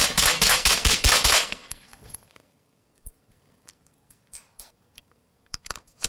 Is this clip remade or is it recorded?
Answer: remade